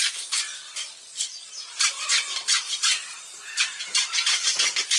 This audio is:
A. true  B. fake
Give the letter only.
B